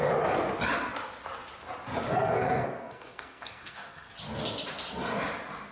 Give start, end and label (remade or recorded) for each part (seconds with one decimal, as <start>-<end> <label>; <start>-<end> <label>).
0.0-2.1 recorded; 2.1-4.1 remade; 4.1-5.7 recorded